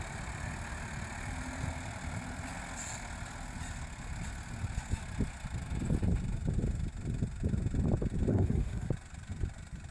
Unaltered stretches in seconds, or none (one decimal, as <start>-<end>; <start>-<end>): 0.0-8.3; 8.9-9.9